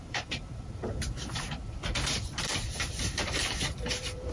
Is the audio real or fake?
fake